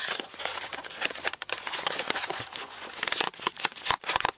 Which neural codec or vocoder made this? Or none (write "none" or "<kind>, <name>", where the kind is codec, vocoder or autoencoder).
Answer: vocoder, Vocos